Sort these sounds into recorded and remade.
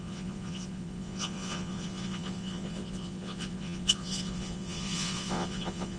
remade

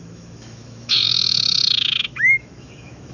remade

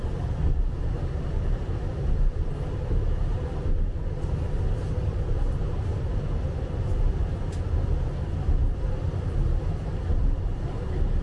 recorded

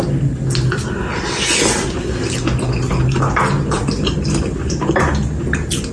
recorded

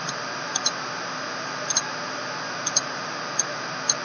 recorded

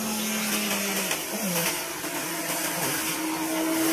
recorded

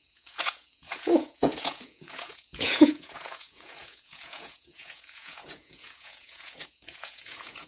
remade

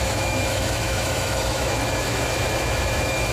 remade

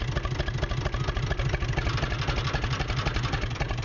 recorded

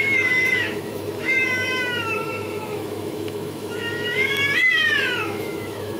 remade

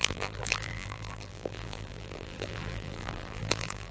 remade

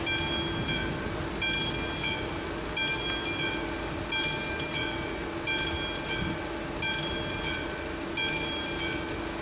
recorded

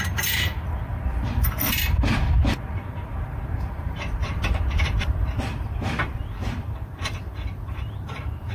remade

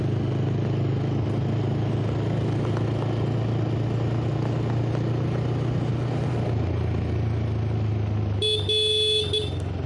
recorded